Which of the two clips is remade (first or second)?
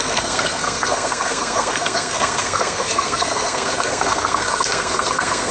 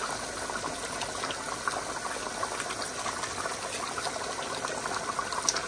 first